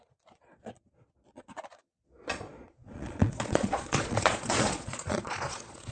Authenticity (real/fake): fake